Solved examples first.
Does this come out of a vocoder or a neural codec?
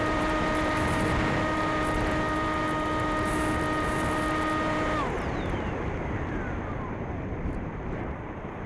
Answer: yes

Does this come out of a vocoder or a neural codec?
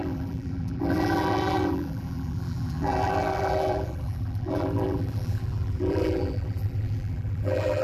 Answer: yes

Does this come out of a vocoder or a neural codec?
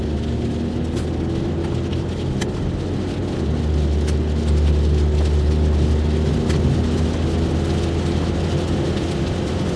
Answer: no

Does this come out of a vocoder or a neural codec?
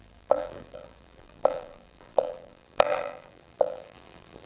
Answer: yes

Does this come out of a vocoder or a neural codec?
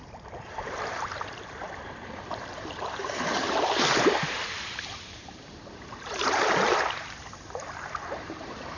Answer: yes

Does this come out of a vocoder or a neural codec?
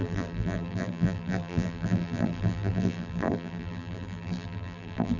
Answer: yes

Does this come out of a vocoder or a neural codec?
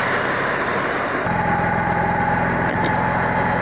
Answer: no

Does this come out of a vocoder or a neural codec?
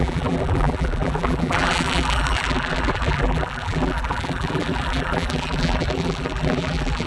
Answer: yes